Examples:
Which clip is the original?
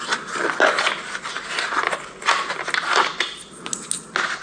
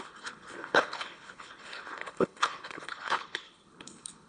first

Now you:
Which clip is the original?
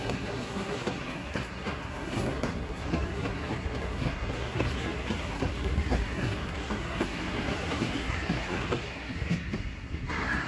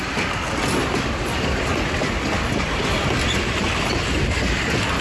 second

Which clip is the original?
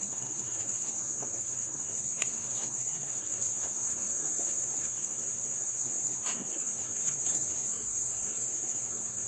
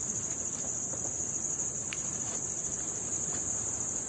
second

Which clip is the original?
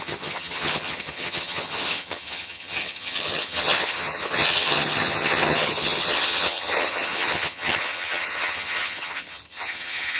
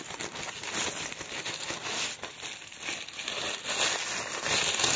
second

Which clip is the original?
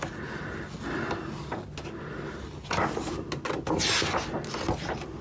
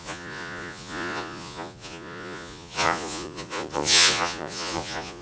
first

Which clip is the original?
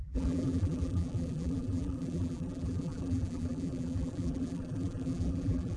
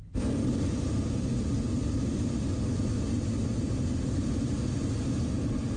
second